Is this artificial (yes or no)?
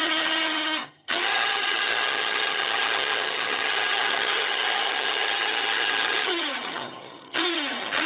yes